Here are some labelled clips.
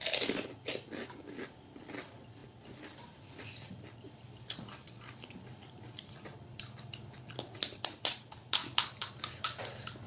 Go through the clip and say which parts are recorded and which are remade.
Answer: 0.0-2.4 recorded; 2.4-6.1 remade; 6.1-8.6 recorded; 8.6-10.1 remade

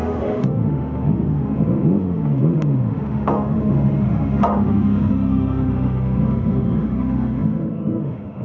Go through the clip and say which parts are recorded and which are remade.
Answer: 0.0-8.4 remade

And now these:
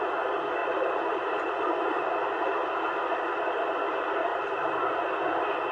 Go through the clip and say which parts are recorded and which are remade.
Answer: 0.0-0.6 recorded; 0.6-1.5 remade; 1.5-4.3 recorded; 4.3-4.8 remade; 4.8-5.7 recorded

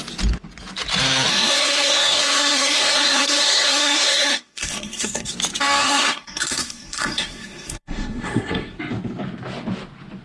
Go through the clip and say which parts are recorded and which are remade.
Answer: 0.0-1.3 recorded; 1.3-5.3 remade; 5.3-5.8 recorded; 5.8-8.8 remade; 8.8-10.2 recorded

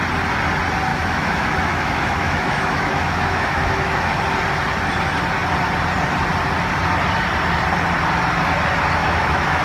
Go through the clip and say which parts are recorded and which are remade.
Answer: 0.0-0.9 recorded; 0.9-4.2 remade; 4.2-9.0 recorded; 9.0-9.6 remade

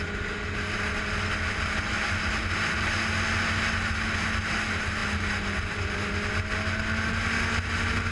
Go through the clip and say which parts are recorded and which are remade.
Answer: 0.0-8.1 recorded

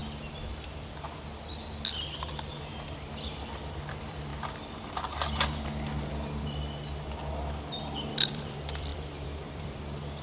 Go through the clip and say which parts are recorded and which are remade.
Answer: 0.0-3.9 recorded; 3.9-4.3 remade; 4.3-7.8 recorded; 7.8-10.2 remade